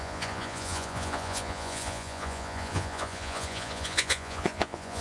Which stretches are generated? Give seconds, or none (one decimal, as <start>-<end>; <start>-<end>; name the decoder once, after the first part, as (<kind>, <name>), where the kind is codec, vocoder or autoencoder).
0.0-5.0 (vocoder, Vocos)